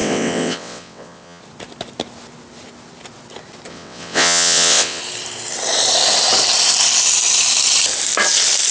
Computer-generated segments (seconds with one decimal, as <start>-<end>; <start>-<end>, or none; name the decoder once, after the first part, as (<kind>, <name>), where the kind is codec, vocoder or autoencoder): 0.0-1.4 (vocoder, WaveNeXt); 3.7-5.0